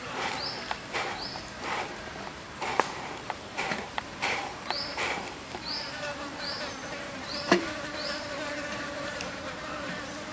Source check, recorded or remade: remade